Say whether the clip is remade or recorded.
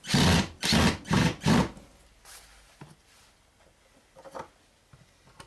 recorded